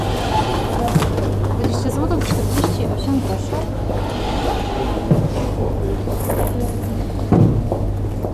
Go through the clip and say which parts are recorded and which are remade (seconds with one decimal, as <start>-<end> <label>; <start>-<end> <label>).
0.0-8.3 recorded